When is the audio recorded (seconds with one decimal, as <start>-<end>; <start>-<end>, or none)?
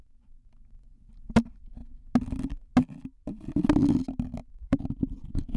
0.0-4.4; 5.0-5.6